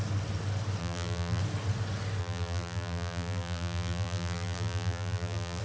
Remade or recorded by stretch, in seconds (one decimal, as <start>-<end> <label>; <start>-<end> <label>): 0.0-0.8 recorded; 0.8-1.4 remade; 1.4-2.2 recorded; 2.2-5.6 remade